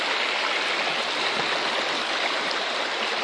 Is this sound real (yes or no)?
yes